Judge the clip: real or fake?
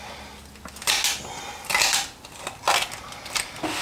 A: real